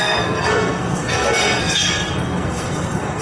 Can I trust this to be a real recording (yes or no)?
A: no